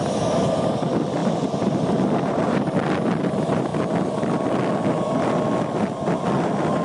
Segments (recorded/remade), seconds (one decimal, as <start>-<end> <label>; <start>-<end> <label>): 0.0-3.7 remade; 3.7-6.3 recorded; 6.3-6.8 remade